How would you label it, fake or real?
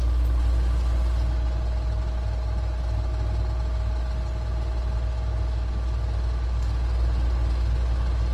real